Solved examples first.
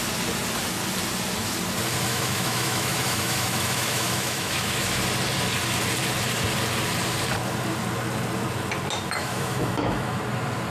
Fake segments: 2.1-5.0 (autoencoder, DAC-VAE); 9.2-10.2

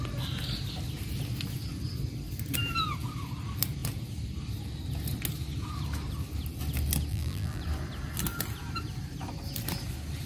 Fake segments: 7.1-7.6 (vocoder, BigVGAN v2)

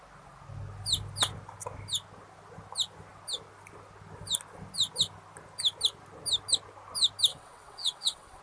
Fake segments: 7.3-8.4 (vocoder, WaveNeXt)

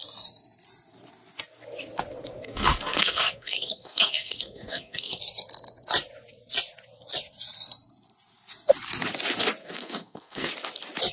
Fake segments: 2.4-5.2 (codec, SNAC); 9.6-10.5

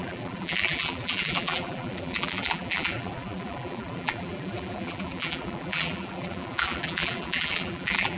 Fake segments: 0.0-8.2 (vocoder, BigVGAN v2)

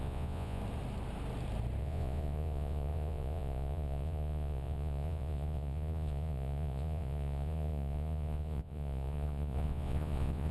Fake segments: 0.0-0.6 (vocoder, Vocos); 1.8-10.5

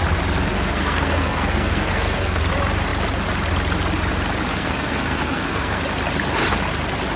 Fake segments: 0.5-2.4 (codec, SNAC); 4.5-5.8

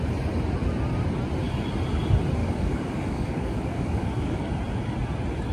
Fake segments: 2.4-4.5 (codec, DAC)